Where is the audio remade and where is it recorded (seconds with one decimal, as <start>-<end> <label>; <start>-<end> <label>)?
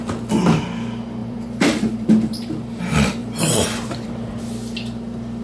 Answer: 0.0-1.2 recorded; 1.2-2.8 remade; 2.8-3.2 recorded; 3.2-4.1 remade; 4.1-5.4 recorded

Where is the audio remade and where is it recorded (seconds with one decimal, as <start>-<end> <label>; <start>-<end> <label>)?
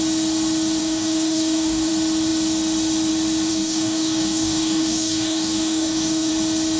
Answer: 0.0-0.8 recorded; 0.8-1.9 remade; 1.9-3.5 recorded; 3.5-6.3 remade; 6.3-6.8 recorded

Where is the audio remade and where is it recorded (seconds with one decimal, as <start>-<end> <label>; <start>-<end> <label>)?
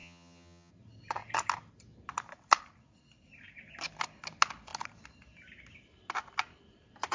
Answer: 0.0-0.7 remade; 0.7-7.1 recorded